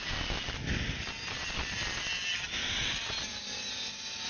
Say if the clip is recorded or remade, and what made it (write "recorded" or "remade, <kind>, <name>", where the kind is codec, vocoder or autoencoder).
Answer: recorded